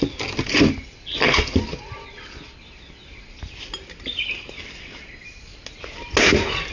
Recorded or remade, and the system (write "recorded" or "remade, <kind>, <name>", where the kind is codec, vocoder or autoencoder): recorded